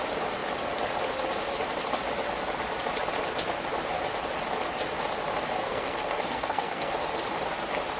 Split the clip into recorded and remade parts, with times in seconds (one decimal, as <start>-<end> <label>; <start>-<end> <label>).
0.0-5.6 recorded; 5.6-6.9 remade; 6.9-8.0 recorded